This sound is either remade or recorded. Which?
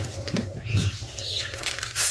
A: remade